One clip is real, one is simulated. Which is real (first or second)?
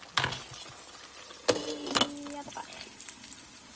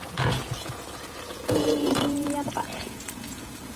first